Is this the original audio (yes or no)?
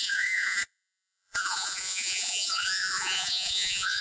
no